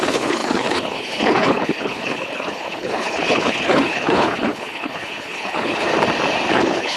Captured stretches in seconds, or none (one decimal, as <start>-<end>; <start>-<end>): 5.9-6.5